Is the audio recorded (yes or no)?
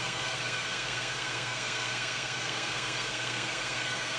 no